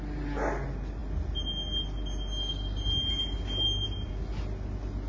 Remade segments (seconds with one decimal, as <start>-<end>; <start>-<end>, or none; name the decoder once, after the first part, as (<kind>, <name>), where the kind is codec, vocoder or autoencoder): none